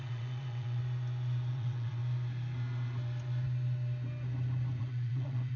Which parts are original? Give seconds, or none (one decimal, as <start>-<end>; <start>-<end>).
0.8-1.5; 2.0-4.8